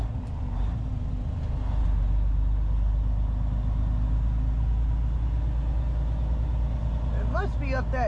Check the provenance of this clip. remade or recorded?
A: recorded